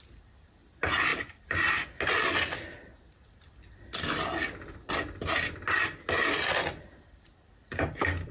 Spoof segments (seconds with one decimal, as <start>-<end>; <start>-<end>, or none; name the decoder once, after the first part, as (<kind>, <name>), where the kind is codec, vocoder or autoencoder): none